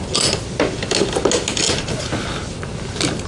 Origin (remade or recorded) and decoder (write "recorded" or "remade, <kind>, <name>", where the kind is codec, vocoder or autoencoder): recorded